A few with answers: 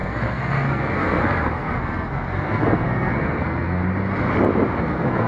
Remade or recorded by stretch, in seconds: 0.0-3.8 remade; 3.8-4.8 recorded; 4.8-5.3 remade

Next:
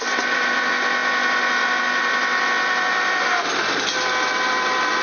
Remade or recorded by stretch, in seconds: 0.0-5.0 recorded

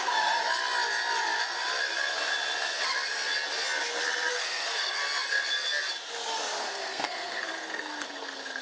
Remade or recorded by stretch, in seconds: 0.0-0.4 remade; 0.4-4.3 recorded; 4.3-5.0 remade; 5.0-6.6 recorded; 6.6-8.6 remade